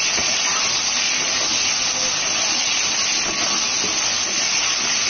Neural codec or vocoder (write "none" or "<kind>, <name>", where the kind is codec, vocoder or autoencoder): none